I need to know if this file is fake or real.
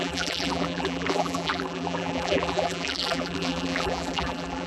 fake